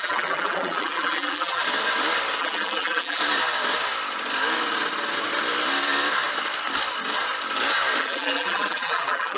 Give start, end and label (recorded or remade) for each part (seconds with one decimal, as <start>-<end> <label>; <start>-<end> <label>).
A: 0.0-1.6 remade; 1.6-2.4 recorded; 2.4-3.2 remade; 3.2-8.0 recorded; 8.0-9.4 remade